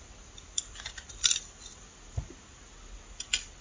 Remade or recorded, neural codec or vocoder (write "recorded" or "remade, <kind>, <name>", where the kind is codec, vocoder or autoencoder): recorded